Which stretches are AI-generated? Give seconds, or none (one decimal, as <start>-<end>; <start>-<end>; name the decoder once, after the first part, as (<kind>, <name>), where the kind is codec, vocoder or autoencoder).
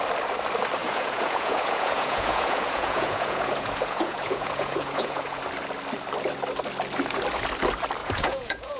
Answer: 0.8-5.4 (vocoder, Vocos); 8.0-8.8